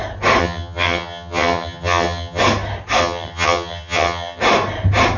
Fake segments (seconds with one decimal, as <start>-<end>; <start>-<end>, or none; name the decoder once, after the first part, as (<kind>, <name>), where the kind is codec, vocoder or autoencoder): 0.4-2.4 (vocoder, HiFi-GAN); 3.0-4.4